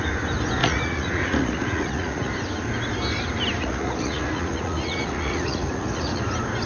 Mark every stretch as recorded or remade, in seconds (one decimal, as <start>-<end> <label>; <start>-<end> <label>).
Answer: 0.0-0.6 recorded; 0.6-2.3 remade; 2.3-3.6 recorded; 3.6-6.2 remade; 6.2-6.7 recorded